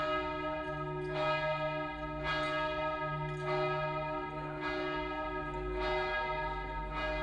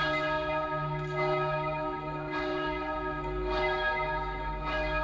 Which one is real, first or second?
first